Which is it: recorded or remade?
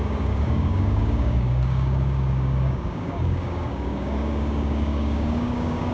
remade